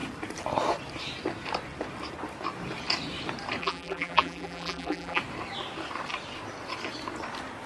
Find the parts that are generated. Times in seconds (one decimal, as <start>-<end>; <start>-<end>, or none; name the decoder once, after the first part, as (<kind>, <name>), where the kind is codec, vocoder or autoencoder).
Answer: 3.6-5.2 (vocoder, BigVGAN v2)